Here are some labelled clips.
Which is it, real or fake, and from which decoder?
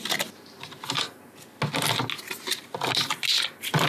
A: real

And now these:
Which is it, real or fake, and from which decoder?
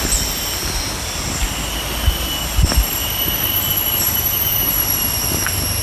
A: real